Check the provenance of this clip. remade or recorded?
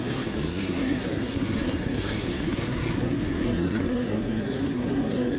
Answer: remade